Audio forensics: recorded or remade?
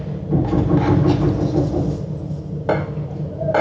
recorded